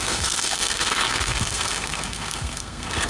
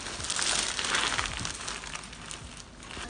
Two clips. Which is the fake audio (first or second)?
first